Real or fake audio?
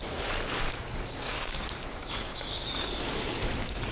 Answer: fake